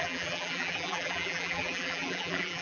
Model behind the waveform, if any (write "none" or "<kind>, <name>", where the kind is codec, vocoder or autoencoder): vocoder, BigVGAN v2